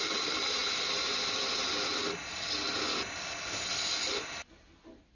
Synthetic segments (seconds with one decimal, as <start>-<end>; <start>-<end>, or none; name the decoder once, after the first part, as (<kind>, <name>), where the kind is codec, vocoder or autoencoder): none